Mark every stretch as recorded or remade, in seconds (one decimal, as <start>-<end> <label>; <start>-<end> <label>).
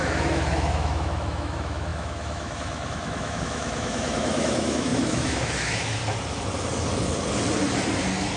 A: 0.0-6.0 remade; 6.0-8.4 recorded